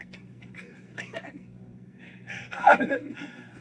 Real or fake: fake